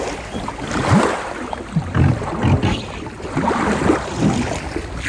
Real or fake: real